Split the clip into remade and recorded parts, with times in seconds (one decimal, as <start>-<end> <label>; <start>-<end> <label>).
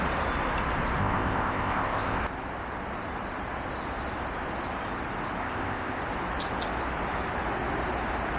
0.0-1.0 recorded; 1.0-2.2 remade; 2.2-5.4 recorded; 5.4-6.0 remade; 6.0-8.4 recorded